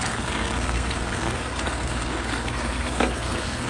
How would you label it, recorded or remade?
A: remade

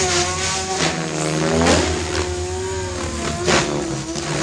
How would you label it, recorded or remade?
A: recorded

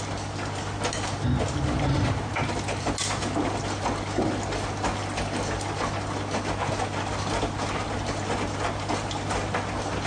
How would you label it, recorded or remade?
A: recorded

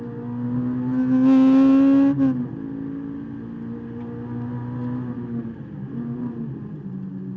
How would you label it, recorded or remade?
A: recorded